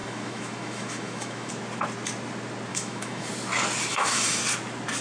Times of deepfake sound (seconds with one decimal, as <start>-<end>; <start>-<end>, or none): 0.0-1.5; 2.7-3.3; 3.9-4.4